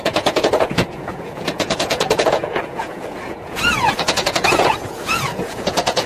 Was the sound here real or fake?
fake